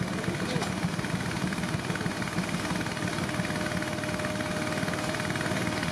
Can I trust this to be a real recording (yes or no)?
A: yes